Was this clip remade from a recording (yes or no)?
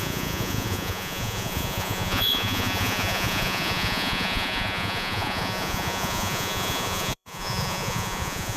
yes